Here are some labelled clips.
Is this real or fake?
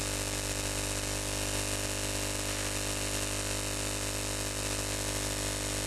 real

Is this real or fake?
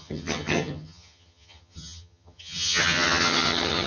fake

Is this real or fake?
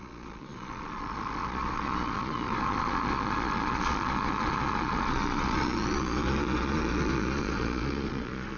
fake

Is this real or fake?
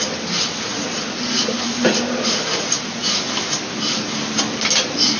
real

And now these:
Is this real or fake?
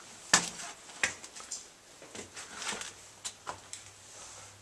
real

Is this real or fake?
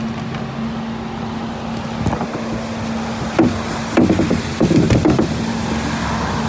real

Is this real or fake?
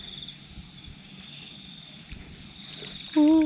real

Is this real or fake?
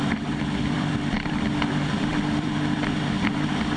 fake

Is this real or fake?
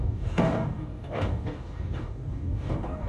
fake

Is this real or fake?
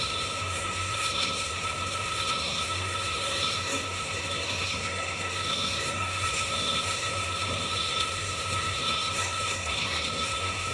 fake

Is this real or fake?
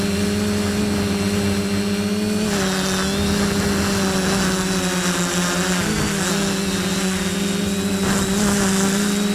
real